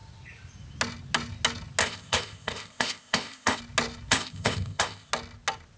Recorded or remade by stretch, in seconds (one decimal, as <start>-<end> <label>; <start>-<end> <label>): 0.0-1.8 recorded; 1.8-3.6 remade; 3.6-4.1 recorded; 4.1-5.1 remade; 5.1-5.8 recorded